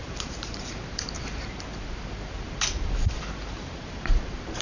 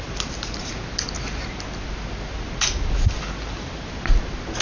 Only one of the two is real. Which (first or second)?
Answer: second